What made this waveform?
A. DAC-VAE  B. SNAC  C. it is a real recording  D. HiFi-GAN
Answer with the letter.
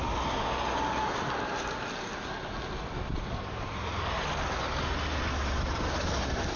C